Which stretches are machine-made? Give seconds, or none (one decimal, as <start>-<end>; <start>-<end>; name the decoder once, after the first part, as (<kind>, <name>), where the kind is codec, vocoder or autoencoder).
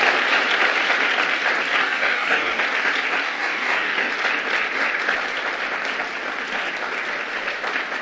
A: 1.8-2.6 (codec, DAC); 3.2-4.1